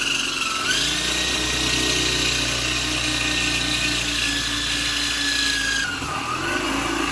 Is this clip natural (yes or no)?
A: yes